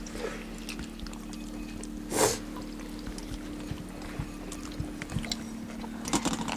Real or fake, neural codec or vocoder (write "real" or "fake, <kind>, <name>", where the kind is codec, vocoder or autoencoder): real